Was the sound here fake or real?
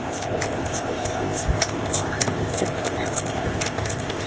fake